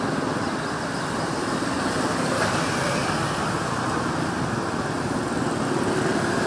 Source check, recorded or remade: recorded